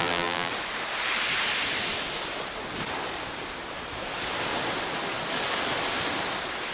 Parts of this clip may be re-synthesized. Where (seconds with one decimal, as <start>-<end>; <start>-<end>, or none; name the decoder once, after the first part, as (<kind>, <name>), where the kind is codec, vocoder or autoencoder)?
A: 0.0-0.5 (vocoder, BigVGAN v2)